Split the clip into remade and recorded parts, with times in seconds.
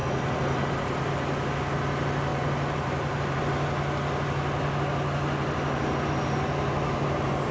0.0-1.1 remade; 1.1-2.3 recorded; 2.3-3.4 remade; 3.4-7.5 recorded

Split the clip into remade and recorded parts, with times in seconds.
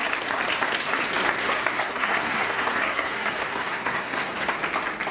0.0-1.4 recorded; 1.4-4.5 remade; 4.5-5.1 recorded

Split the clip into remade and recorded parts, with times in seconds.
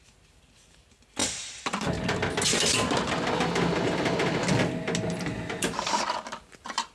0.0-6.9 recorded